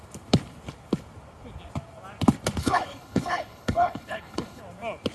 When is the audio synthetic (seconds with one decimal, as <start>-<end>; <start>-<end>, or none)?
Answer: 2.6-4.6